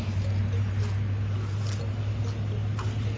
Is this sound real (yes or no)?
yes